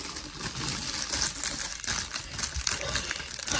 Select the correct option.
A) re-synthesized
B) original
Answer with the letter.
B